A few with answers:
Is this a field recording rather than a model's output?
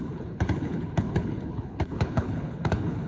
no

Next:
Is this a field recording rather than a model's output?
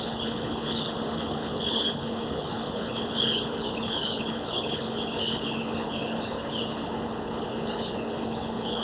no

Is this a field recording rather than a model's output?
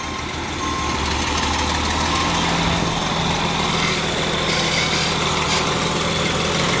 yes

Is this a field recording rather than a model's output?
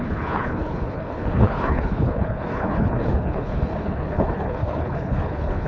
no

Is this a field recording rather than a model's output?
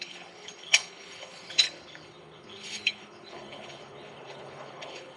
no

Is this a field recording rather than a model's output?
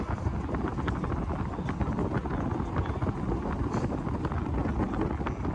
yes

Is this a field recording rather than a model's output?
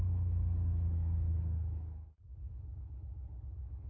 no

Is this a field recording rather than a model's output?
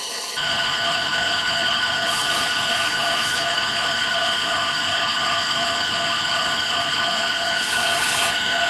no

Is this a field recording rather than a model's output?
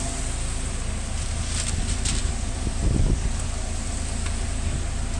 yes